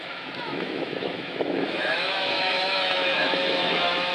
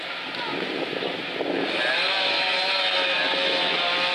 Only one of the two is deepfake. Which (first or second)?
first